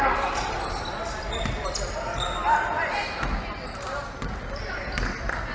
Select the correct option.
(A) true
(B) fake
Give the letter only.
A